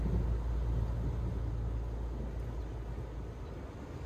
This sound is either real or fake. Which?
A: real